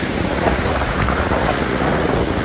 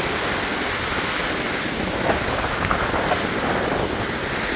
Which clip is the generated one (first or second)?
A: first